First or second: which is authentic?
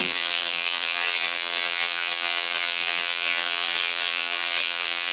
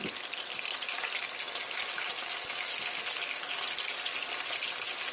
second